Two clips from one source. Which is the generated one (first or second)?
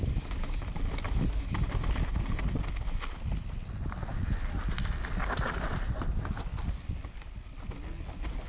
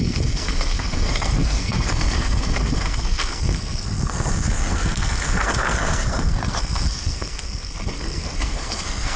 second